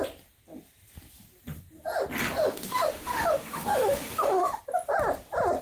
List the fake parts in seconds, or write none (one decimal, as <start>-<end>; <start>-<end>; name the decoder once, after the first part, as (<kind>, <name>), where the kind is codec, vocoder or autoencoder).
2.4-4.6 (autoencoder, DAC-VAE)